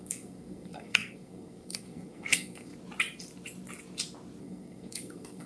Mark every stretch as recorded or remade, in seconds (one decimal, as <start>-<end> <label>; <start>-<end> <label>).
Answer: 0.0-2.7 remade; 2.7-4.4 recorded; 4.4-5.5 remade